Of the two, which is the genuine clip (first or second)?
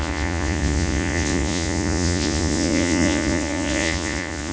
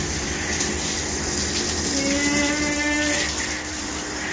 second